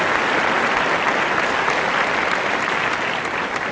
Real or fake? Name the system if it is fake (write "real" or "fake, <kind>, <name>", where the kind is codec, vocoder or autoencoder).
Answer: real